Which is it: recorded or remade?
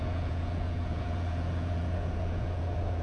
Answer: remade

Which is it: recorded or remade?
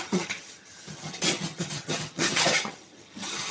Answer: remade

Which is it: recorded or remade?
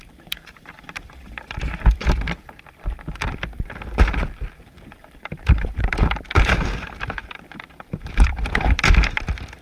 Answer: remade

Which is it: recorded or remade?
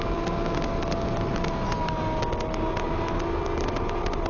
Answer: recorded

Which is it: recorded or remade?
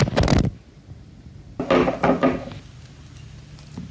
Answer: recorded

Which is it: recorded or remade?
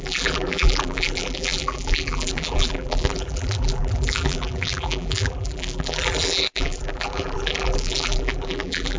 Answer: remade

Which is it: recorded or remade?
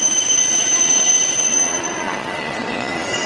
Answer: remade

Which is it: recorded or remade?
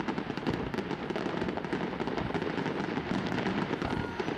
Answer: recorded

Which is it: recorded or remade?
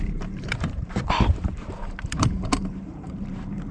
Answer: remade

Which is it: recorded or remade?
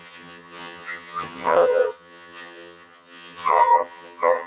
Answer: remade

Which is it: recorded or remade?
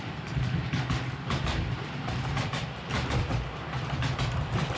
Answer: remade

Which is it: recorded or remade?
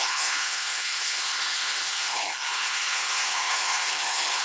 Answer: remade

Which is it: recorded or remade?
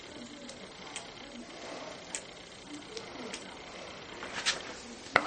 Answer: recorded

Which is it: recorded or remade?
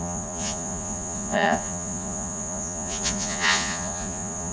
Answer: remade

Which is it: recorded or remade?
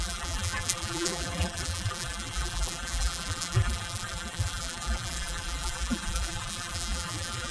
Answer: remade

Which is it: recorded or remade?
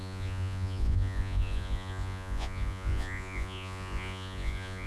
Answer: remade